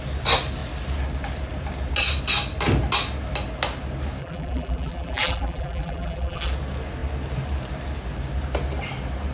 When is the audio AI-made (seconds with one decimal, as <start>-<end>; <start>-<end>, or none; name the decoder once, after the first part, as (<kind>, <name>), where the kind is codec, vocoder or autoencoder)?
4.2-6.5 (vocoder, BigVGAN v2)